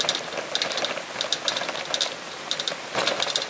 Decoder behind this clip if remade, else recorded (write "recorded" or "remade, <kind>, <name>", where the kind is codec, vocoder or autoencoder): recorded